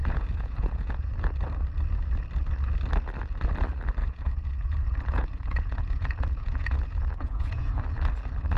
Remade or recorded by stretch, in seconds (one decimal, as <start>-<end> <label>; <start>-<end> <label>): 0.0-1.1 remade; 1.1-4.0 recorded; 4.0-7.7 remade; 7.7-8.6 recorded